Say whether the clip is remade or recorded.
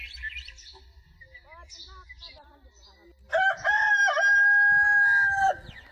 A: recorded